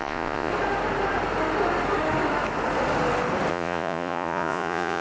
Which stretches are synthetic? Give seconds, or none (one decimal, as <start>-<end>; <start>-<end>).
0.0-0.5; 3.5-5.0